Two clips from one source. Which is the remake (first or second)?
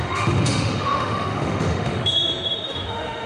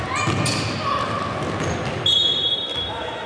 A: first